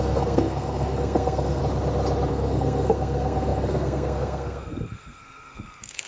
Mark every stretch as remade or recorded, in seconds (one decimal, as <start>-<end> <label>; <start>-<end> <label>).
0.0-1.6 remade; 1.6-2.3 recorded; 2.3-6.1 remade